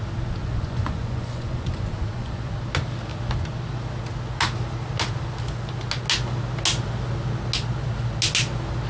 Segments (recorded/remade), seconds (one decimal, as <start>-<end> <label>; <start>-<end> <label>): 0.0-0.4 recorded; 0.4-2.5 remade; 2.5-8.9 recorded